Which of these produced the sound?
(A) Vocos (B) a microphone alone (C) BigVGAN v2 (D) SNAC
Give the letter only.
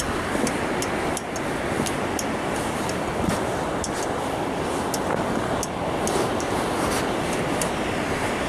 B